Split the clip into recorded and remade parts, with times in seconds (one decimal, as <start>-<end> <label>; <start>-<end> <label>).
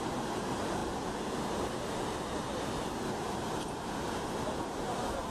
0.0-0.8 recorded; 0.8-4.0 remade; 4.0-5.3 recorded